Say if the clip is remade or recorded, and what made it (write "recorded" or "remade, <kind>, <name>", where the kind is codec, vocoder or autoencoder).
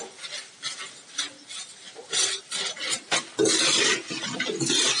recorded